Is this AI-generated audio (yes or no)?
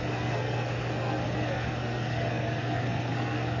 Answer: yes